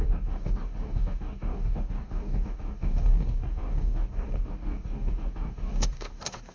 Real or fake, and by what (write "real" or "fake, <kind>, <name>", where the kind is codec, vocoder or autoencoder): fake, codec, DAC